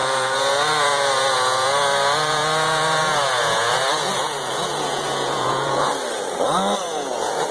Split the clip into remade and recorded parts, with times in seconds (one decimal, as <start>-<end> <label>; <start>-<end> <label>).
0.0-5.9 remade; 5.9-6.8 recorded; 6.8-7.5 remade